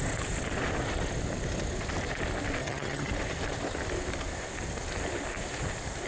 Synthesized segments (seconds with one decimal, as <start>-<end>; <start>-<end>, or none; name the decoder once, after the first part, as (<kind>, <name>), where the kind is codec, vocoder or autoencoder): 2.6-3.1 (vocoder, HiFi-GAN)